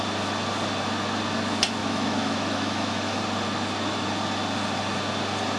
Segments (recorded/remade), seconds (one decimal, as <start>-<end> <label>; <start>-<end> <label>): 0.0-1.8 recorded; 1.8-3.2 remade; 3.2-5.6 recorded